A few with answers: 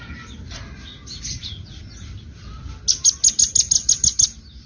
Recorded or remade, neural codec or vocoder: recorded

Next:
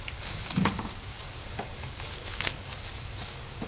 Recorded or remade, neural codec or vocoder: remade, codec, DAC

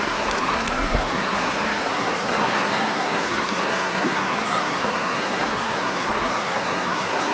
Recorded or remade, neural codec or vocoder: remade, codec, SNAC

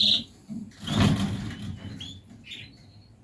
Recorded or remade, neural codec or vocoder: recorded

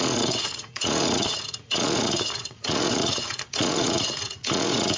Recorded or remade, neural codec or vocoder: remade, vocoder, Vocos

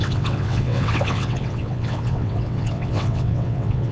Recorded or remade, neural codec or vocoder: remade, vocoder, WaveNeXt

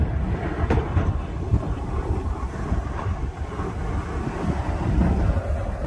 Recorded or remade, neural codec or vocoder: recorded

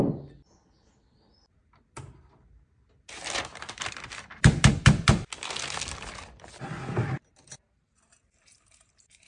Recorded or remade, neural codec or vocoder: recorded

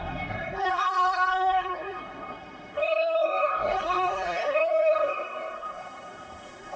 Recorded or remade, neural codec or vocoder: remade, codec, SNAC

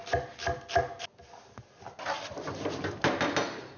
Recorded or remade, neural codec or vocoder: recorded